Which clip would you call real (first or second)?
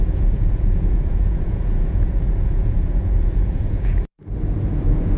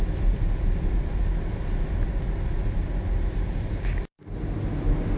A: second